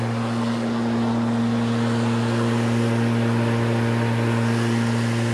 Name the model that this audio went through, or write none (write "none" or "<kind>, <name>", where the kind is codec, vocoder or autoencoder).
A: none